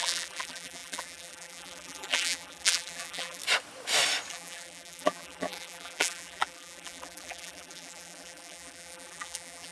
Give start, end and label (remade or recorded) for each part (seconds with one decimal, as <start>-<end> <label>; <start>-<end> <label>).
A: 0.0-3.4 remade; 3.4-4.3 recorded; 4.3-9.7 remade